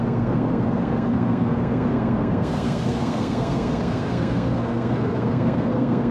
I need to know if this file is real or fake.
fake